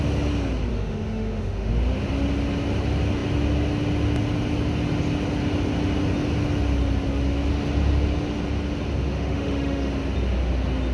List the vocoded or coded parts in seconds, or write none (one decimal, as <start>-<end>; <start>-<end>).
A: 0.7-1.7; 9.0-9.9